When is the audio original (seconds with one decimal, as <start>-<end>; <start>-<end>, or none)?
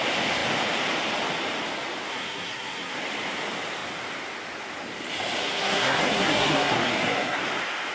0.0-2.1; 3.0-5.4; 7.4-7.9